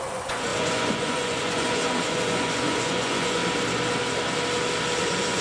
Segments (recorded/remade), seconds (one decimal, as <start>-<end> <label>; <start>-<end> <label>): 0.0-3.4 remade; 3.4-5.0 recorded; 5.0-5.4 remade